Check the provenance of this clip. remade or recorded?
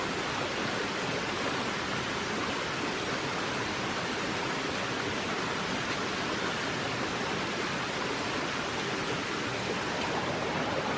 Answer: recorded